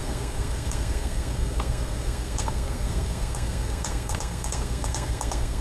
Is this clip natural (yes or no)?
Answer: no